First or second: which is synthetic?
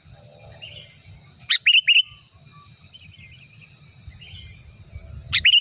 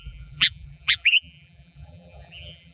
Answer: second